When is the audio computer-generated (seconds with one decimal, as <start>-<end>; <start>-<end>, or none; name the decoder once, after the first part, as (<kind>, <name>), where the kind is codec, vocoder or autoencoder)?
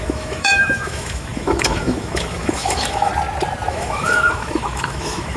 0.0-3.1 (autoencoder, DAC-VAE); 3.7-5.4